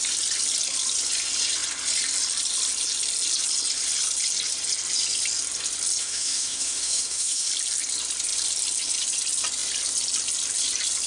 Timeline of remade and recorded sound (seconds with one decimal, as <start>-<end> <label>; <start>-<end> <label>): 0.0-6.0 recorded; 6.0-7.5 remade; 7.5-11.1 recorded